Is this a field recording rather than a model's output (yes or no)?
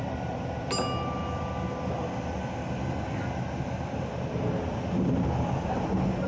yes